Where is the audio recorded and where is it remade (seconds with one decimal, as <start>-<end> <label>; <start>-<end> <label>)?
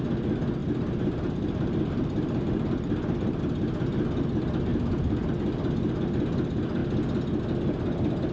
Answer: 0.0-0.6 recorded; 0.6-3.4 remade; 3.4-4.7 recorded; 4.7-5.3 remade; 5.3-8.3 recorded